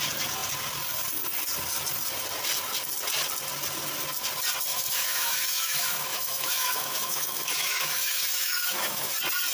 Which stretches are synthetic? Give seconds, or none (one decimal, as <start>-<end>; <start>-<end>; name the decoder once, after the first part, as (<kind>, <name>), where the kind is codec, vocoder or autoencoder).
4.7-9.1 (autoencoder, DAC-VAE)